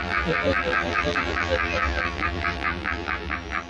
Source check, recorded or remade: remade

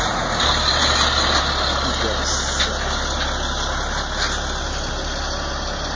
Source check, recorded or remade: recorded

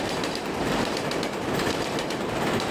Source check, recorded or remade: remade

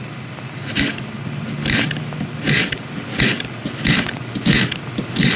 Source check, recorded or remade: recorded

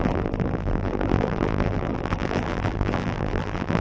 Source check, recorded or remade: remade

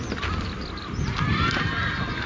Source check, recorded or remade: recorded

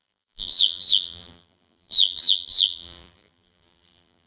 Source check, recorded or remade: remade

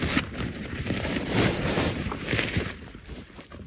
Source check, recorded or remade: remade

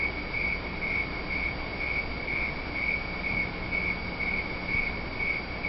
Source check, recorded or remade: recorded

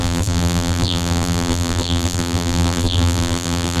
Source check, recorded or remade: remade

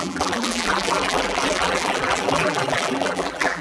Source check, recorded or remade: remade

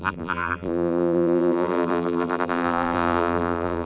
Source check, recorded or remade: remade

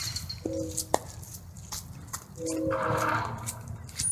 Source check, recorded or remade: remade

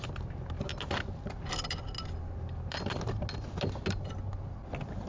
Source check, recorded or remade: recorded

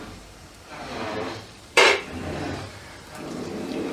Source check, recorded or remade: remade